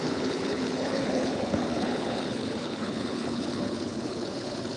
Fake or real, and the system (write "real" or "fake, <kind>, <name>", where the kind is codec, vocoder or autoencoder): fake, codec, HILCodec